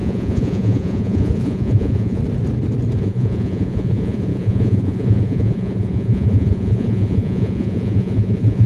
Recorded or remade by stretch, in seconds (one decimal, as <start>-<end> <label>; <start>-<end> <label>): 0.0-2.2 remade; 2.2-3.0 recorded; 3.0-8.7 remade